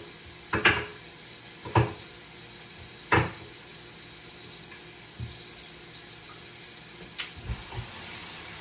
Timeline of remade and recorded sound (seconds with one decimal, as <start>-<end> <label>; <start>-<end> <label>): 0.0-8.6 recorded